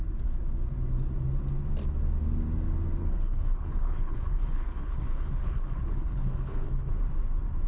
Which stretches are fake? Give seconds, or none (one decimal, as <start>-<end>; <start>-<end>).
3.0-6.9